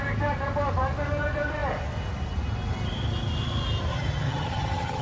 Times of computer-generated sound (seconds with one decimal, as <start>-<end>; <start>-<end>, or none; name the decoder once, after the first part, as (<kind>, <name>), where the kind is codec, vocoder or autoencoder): 3.9-5.0 (vocoder, HiFi-GAN)